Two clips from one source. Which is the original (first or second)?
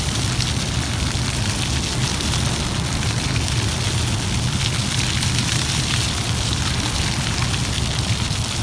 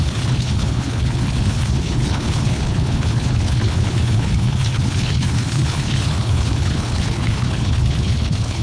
first